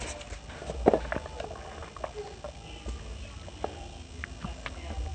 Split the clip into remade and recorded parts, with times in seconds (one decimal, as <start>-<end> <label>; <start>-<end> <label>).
0.0-5.1 recorded